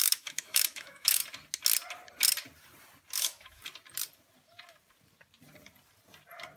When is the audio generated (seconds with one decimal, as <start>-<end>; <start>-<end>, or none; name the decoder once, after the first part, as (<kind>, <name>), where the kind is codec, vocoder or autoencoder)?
0.0-1.2 (autoencoder, DAC-VAE); 3.2-3.6